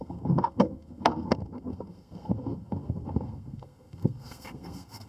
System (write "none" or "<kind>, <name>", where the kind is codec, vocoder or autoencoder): codec, SNAC